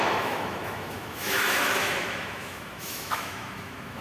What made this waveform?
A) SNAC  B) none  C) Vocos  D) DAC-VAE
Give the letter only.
D